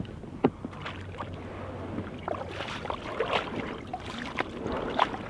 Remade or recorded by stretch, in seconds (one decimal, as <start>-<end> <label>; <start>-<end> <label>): 0.0-5.3 recorded